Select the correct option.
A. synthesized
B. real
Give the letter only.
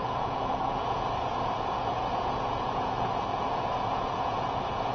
A